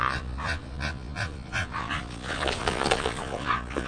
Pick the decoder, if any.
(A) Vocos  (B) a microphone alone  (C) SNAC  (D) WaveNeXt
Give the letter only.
A